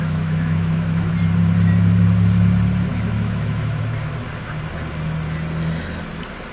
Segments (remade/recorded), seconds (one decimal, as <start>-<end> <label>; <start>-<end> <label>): 0.0-1.1 remade; 1.1-2.9 recorded; 2.9-3.8 remade; 3.8-6.5 recorded

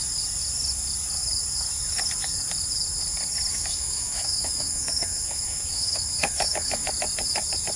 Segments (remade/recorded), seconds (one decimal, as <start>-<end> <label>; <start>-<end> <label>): 0.0-3.5 recorded; 3.5-6.9 remade; 6.9-7.8 recorded

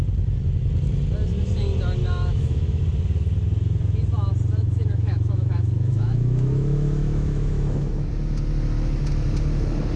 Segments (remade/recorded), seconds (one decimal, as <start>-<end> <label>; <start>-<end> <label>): 0.0-2.0 recorded; 2.0-2.8 remade; 2.8-4.6 recorded; 4.6-8.1 remade; 8.1-10.0 recorded

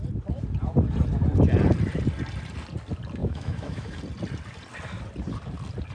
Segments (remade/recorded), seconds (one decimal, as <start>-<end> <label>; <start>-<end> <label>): 0.0-3.2 recorded; 3.2-4.0 remade; 4.0-5.9 recorded